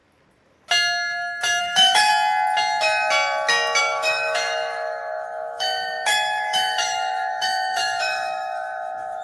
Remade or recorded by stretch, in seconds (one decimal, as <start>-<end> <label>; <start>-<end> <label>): 0.0-1.6 recorded; 1.6-2.1 remade; 2.1-3.8 recorded; 3.8-9.2 remade